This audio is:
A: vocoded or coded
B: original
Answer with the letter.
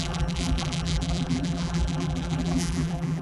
A